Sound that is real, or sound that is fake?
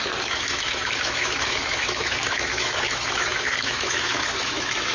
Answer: fake